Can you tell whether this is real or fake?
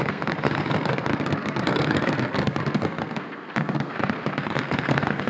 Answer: fake